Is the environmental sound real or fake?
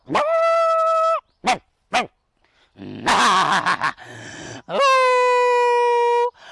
real